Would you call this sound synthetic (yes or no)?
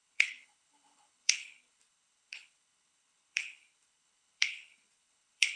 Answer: yes